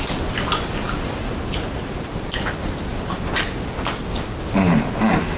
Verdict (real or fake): real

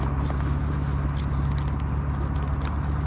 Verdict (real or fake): real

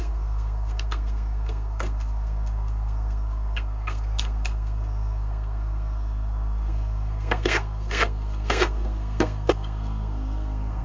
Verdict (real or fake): fake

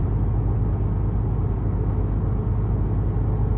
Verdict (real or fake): real